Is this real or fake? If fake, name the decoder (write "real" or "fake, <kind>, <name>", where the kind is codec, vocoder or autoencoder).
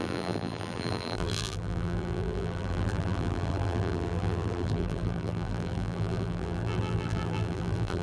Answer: fake, vocoder, BigVGAN v2